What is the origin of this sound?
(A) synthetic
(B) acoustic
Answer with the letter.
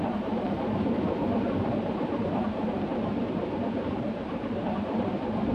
A